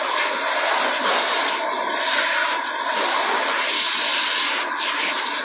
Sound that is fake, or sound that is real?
fake